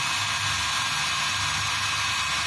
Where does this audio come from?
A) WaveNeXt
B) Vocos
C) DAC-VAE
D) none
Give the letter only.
D